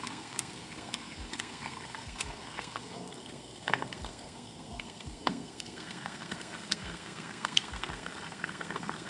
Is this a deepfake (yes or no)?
yes